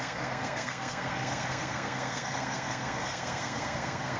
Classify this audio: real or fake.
fake